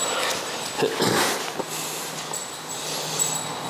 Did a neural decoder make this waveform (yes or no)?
no